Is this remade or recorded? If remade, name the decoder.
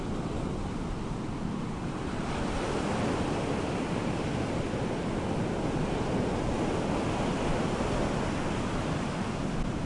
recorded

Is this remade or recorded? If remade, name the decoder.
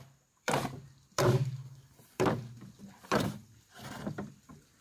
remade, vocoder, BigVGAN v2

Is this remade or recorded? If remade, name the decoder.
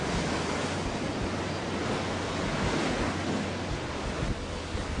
recorded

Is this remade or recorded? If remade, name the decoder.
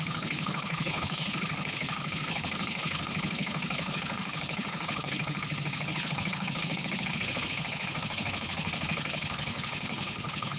remade, codec, HILCodec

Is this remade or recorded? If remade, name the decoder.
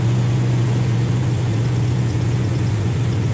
remade, vocoder, Vocos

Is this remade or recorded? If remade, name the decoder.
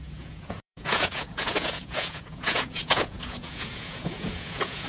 remade, vocoder, Vocos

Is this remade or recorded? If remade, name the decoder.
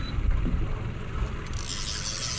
recorded